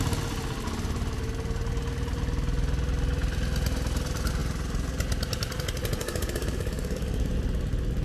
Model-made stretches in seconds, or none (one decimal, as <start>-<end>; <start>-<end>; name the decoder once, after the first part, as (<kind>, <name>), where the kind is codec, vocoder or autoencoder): 6.0-7.3 (codec, DAC)